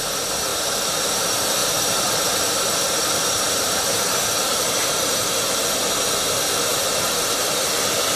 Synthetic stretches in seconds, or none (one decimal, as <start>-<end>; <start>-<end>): 0.5-1.2; 1.6-5.3; 6.7-7.6